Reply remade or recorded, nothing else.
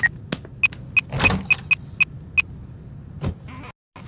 recorded